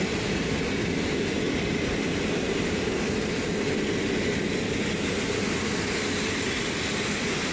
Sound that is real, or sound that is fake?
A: real